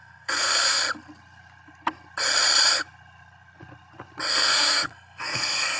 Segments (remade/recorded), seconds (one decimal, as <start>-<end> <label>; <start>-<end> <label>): 0.0-0.8 remade; 0.8-4.3 recorded; 4.3-5.8 remade